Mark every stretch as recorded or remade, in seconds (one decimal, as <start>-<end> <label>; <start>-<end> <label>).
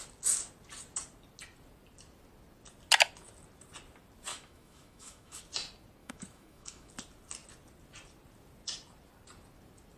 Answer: 0.0-4.3 recorded; 4.3-5.4 remade; 5.4-6.0 recorded; 6.0-6.9 remade; 6.9-10.0 recorded